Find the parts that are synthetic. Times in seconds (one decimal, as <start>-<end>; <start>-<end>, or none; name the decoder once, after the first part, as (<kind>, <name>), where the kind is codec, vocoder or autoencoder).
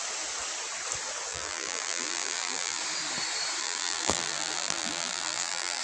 1.3-2.8 (vocoder, BigVGAN v2); 3.6-5.8